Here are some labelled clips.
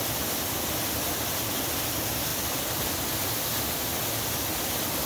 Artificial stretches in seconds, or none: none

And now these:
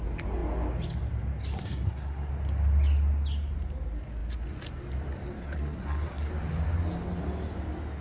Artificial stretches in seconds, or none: 1.5-2.3; 5.4-6.3

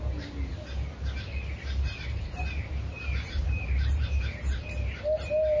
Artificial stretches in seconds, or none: none